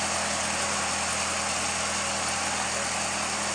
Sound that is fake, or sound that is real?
real